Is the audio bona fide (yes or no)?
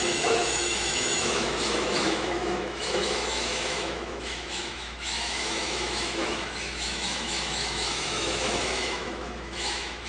no